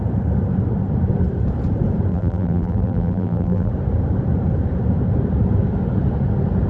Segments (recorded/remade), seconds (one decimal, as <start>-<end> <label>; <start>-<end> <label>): 0.0-2.1 recorded; 2.1-3.7 remade; 3.7-6.7 recorded